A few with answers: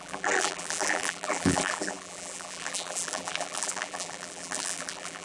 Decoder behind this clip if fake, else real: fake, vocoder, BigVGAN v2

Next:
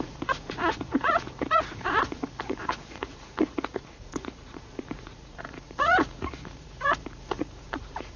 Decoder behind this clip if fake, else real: fake, vocoder, Vocos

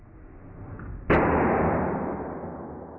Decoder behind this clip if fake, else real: real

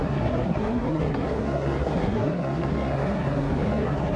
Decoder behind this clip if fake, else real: fake, codec, SNAC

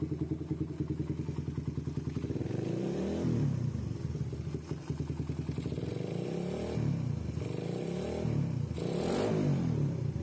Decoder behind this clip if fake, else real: real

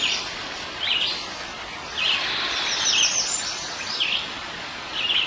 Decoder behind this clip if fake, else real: real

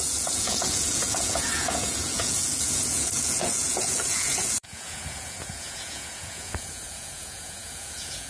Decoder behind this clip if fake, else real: fake, vocoder, Vocos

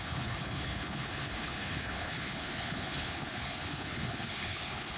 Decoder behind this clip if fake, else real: fake, codec, HILCodec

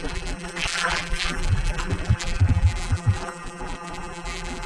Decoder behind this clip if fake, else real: fake, vocoder, BigVGAN v2